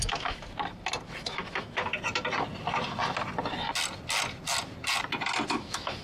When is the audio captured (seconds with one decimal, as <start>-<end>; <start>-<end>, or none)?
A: 0.4-1.2; 1.9-5.5